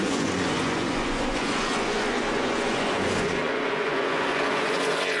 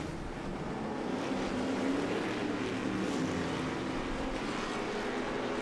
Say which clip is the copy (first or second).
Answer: first